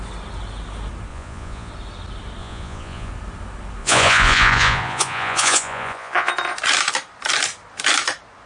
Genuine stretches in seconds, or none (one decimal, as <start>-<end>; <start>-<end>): 0.0-1.1; 1.7-2.4; 3.1-3.8; 6.3-8.5